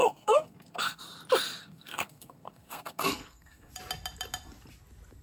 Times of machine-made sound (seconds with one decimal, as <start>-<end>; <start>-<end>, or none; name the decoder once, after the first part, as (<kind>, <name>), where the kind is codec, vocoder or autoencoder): 0.0-1.0 (codec, SNAC); 1.6-3.7